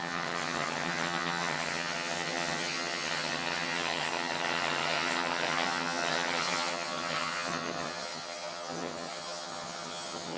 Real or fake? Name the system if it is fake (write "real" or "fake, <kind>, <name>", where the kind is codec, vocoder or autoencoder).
fake, vocoder, HiFi-GAN